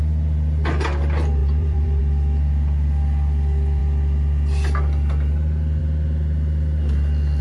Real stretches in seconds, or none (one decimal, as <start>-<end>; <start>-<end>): 0.0-1.4; 2.0-7.4

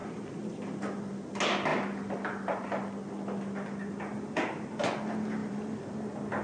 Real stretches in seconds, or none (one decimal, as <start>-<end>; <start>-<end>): 0.0-5.4; 6.0-6.4

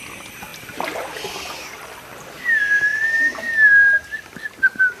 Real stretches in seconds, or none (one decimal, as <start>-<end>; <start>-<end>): 0.0-0.5; 1.1-5.0

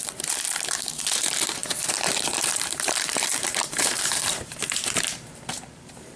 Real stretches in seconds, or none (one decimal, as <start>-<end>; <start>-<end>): none

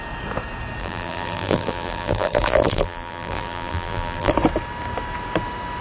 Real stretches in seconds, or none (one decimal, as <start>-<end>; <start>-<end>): 0.0-0.8; 4.3-5.8

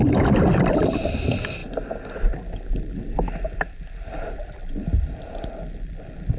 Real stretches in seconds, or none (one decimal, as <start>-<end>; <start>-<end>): 1.6-4.3

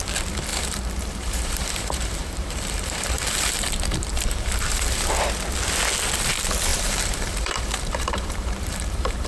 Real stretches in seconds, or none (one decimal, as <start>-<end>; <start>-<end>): 0.0-0.5; 5.1-6.7

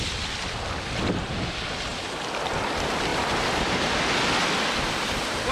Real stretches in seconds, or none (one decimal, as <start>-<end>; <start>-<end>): 0.0-3.1; 3.9-5.5